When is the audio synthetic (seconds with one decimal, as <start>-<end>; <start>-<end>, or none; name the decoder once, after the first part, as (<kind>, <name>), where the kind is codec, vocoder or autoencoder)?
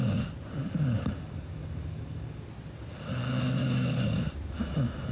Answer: 0.6-2.4 (codec, DAC); 3.6-4.2